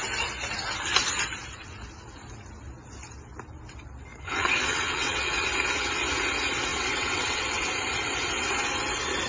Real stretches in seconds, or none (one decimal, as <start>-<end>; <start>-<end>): 0.0-4.1; 5.5-6.7; 7.7-9.3